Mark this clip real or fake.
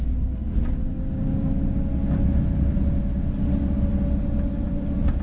real